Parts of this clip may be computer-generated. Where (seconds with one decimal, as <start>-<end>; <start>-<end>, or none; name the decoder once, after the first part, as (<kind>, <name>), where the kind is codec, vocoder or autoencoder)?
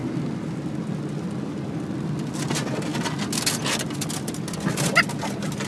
none